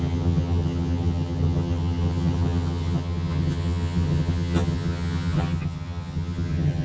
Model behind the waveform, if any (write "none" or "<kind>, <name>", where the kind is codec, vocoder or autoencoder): vocoder, HiFi-GAN